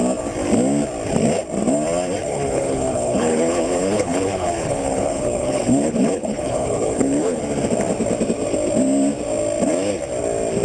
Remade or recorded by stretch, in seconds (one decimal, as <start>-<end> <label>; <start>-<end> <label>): 0.0-2.2 recorded; 2.2-7.4 remade; 7.4-10.6 recorded